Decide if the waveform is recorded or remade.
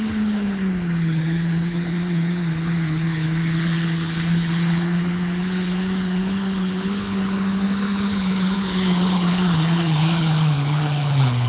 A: remade